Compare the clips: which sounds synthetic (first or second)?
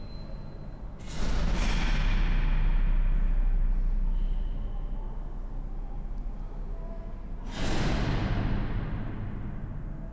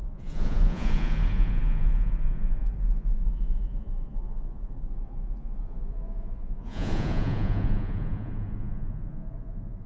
second